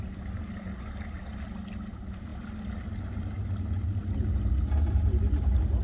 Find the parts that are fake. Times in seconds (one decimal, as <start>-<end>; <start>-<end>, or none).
none